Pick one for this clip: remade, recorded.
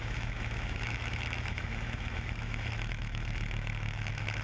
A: remade